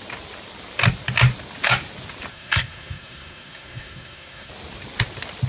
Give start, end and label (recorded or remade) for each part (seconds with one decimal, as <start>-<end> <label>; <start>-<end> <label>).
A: 0.0-2.3 recorded; 2.3-4.5 remade; 4.5-5.5 recorded